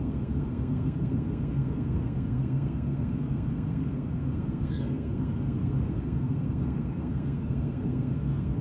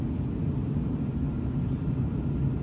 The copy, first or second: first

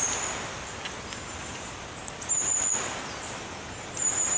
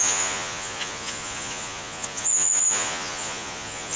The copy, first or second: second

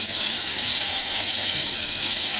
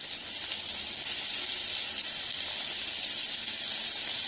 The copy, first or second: first